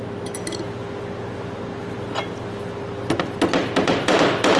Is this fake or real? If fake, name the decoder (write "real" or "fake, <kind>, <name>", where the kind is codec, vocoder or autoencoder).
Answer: real